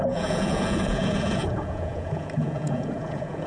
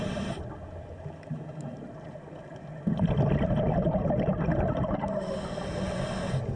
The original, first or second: second